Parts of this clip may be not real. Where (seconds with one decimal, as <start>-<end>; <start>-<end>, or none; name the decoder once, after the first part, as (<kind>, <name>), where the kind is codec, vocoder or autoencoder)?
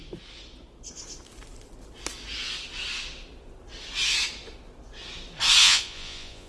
5.6-6.5 (vocoder, Vocos)